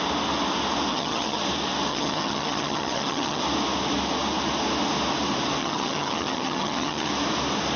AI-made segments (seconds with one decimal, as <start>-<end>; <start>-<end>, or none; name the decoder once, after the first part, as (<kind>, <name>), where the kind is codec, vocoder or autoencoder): 0.9-1.4 (vocoder, HiFi-GAN); 1.9-3.4; 5.6-7.1